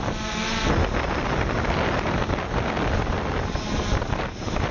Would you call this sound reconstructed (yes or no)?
no